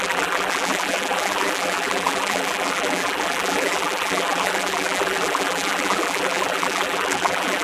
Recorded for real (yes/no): no